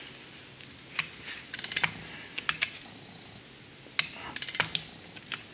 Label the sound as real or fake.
real